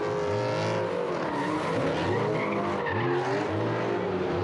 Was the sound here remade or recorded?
recorded